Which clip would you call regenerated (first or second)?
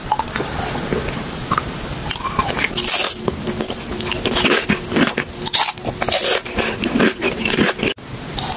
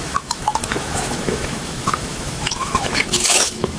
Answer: second